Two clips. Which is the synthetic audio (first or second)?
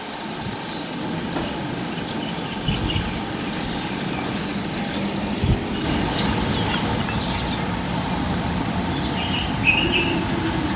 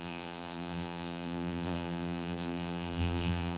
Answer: second